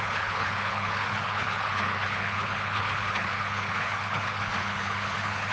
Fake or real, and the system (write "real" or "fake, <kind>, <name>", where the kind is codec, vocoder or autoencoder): fake, codec, HILCodec